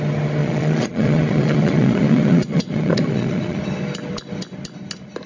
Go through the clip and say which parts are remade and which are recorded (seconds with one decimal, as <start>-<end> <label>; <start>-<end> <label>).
0.0-0.4 recorded; 0.4-3.6 remade; 3.6-5.3 recorded